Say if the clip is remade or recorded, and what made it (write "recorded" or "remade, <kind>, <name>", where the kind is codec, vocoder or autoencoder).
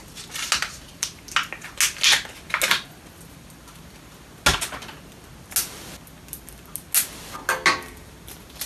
recorded